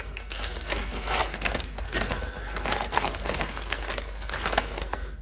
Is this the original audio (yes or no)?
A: no